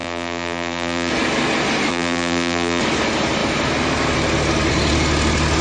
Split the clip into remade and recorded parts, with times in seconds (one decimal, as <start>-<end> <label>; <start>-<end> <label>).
0.0-1.1 remade; 1.1-1.9 recorded; 1.9-2.8 remade; 2.8-5.6 recorded